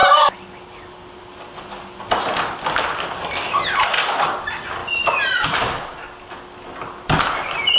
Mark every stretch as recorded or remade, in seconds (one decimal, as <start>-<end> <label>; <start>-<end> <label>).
0.0-7.8 recorded